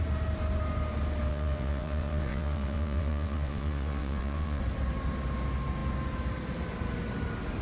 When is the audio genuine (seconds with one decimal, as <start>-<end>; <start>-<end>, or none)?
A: 0.0-1.3; 4.6-7.6